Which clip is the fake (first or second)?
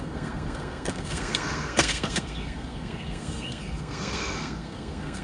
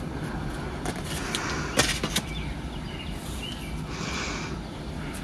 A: first